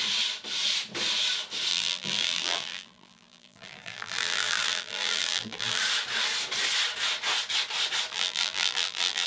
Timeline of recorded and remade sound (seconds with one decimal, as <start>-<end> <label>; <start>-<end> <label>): 0.0-1.7 recorded; 1.7-5.8 remade; 5.8-8.1 recorded; 8.1-9.3 remade